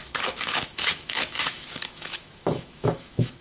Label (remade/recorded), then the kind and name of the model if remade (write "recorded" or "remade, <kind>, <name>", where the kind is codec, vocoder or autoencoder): remade, autoencoder, DAC-VAE